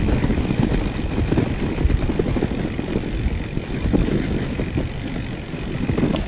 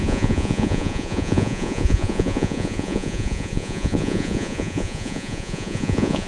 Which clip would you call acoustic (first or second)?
first